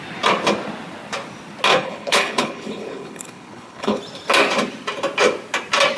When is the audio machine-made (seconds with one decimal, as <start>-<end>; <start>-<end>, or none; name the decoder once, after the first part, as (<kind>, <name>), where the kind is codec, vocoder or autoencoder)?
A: 1.7-4.0 (codec, HILCodec)